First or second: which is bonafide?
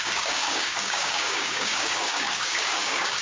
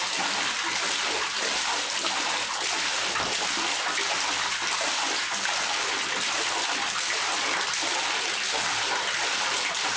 second